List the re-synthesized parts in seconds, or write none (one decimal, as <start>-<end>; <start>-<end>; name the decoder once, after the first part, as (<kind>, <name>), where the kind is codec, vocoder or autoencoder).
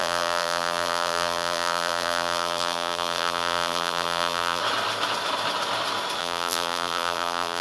0.0-4.6 (vocoder, BigVGAN v2); 6.2-7.6